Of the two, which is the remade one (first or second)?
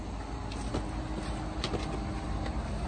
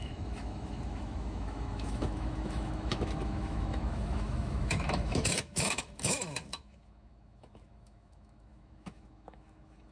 second